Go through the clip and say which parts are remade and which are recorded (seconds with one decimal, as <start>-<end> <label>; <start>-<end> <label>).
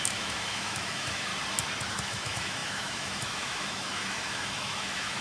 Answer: 0.0-1.3 remade; 1.3-1.9 recorded; 1.9-5.2 remade